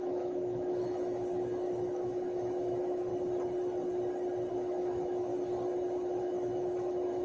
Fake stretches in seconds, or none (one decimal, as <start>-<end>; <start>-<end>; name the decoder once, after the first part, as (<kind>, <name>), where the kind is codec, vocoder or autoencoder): 0.0-3.1 (autoencoder, DAC-VAE); 4.5-5.3; 6.2-7.2